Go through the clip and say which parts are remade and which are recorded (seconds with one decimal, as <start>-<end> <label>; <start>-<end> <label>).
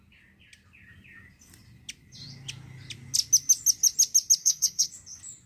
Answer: 0.0-4.4 recorded; 4.4-4.9 remade; 4.9-5.5 recorded